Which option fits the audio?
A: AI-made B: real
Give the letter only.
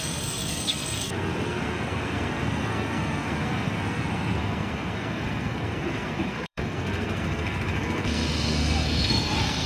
A